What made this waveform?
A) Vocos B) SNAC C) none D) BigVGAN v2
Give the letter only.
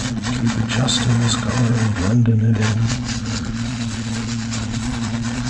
A